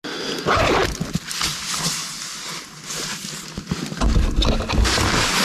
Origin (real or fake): real